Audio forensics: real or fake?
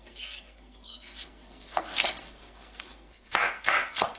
fake